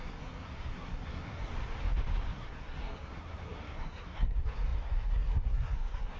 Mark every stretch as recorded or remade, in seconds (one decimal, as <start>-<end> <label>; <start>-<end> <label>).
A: 0.0-1.5 remade; 1.5-2.2 recorded; 2.2-6.2 remade